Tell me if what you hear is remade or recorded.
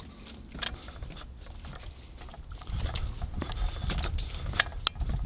recorded